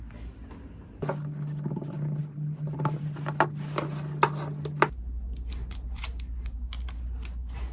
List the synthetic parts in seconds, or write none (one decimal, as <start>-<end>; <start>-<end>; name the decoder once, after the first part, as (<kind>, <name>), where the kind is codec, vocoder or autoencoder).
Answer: none